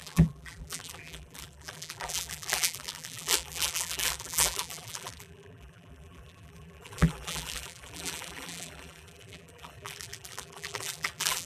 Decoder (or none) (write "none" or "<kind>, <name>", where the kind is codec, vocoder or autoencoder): vocoder, BigVGAN v2